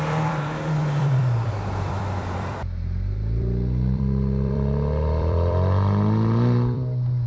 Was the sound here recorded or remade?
remade